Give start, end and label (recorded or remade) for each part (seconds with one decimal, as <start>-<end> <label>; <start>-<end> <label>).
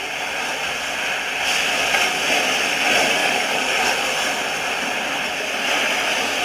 0.0-3.2 recorded; 3.2-3.9 remade; 3.9-6.4 recorded